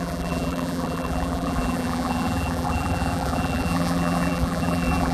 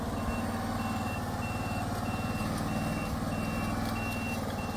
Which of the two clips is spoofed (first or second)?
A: first